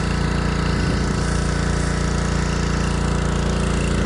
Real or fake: real